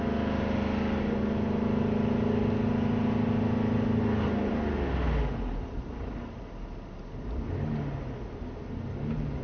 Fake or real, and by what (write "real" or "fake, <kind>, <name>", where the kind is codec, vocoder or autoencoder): real